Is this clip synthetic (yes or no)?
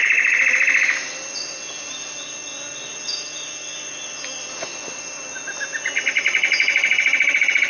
no